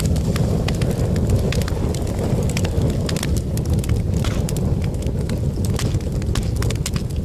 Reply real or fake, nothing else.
real